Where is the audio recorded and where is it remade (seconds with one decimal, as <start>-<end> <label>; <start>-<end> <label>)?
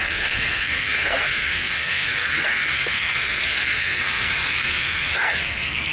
0.0-5.9 remade